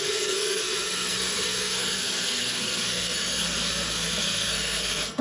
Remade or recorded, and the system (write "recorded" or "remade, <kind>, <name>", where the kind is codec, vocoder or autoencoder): remade, codec, SNAC